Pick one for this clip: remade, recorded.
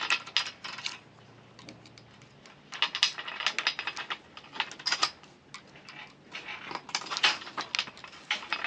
recorded